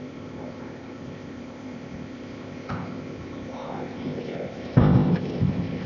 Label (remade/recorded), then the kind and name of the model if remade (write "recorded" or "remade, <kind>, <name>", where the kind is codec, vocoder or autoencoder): remade, codec, ZipCodec